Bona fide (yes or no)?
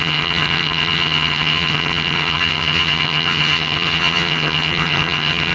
no